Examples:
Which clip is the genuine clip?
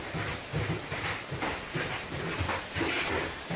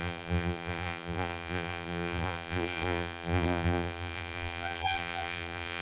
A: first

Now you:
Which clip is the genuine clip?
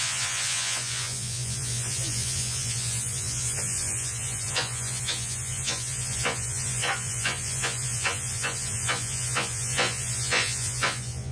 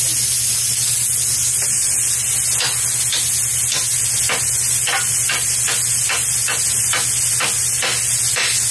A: second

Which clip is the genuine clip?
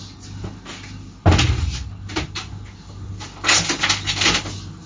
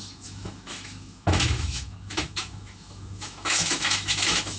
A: first